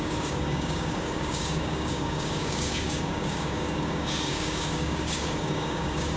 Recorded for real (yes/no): no